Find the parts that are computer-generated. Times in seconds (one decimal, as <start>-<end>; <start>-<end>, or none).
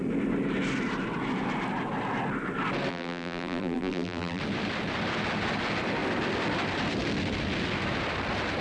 2.9-4.4